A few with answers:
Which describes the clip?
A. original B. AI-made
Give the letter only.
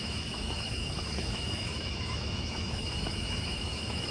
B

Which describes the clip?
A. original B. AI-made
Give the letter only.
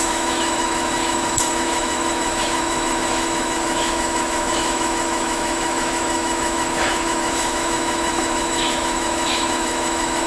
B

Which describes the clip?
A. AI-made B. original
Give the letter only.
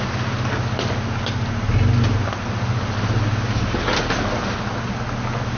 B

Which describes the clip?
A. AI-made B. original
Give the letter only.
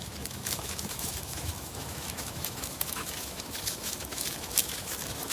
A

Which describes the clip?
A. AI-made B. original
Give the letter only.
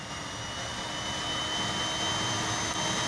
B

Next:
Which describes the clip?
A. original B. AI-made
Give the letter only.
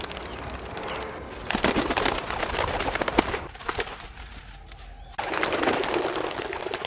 A